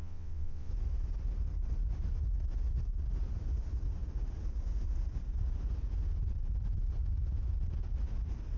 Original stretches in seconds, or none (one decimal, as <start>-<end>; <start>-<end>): 0.7-8.6